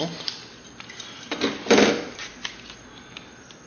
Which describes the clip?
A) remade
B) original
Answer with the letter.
B